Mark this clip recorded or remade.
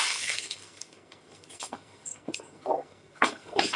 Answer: remade